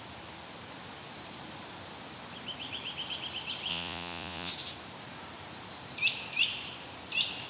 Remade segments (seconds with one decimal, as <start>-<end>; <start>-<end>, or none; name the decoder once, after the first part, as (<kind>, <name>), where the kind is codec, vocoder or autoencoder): 3.7-4.5 (vocoder, Vocos)